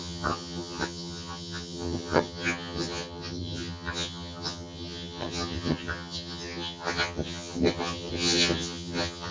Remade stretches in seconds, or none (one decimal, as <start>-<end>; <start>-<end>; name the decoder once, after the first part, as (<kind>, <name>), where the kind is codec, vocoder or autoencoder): 0.0-9.3 (vocoder, HiFi-GAN)